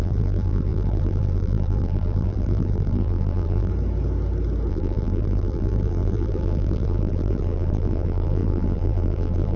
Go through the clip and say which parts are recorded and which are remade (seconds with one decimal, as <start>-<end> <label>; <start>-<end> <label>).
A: 0.0-3.7 remade; 3.7-4.7 recorded; 4.7-9.6 remade